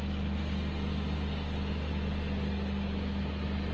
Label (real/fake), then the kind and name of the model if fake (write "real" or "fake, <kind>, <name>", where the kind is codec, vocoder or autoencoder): real